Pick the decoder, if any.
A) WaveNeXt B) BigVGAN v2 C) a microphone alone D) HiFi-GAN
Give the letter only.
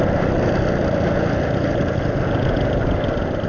C